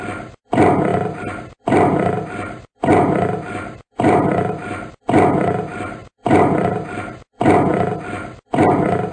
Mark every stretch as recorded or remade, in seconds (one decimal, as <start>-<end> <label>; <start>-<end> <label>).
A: 0.0-0.9 recorded; 0.9-4.9 remade; 4.9-7.7 recorded; 7.7-9.1 remade